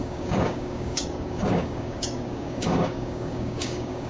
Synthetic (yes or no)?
yes